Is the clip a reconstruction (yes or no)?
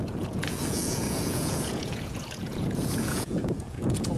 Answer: yes